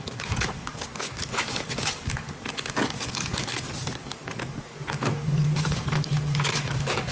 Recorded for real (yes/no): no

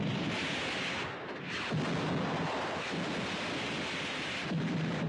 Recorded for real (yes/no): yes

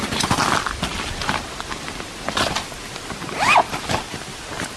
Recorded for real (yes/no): yes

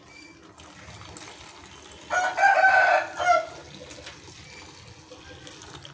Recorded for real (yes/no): yes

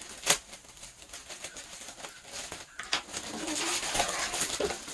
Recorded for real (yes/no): yes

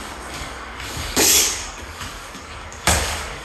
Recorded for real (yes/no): no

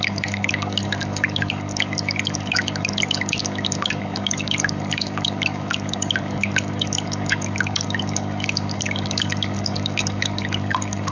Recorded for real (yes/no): no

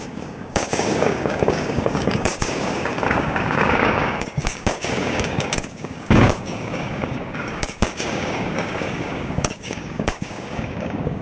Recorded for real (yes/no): no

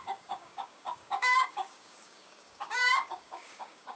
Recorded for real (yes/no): no